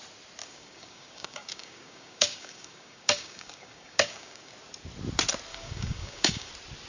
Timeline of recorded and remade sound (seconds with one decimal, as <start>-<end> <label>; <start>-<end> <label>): 0.0-0.4 recorded; 0.4-4.5 remade; 4.5-5.5 recorded; 5.5-6.5 remade; 6.5-6.9 recorded